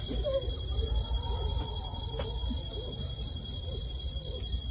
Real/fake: real